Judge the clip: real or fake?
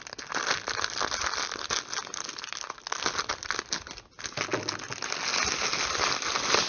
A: real